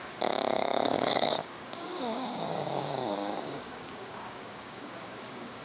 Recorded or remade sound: remade